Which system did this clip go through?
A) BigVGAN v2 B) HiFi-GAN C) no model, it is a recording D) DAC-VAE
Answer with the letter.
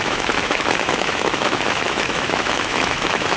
D